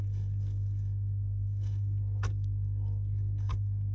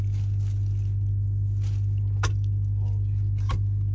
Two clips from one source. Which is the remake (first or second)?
first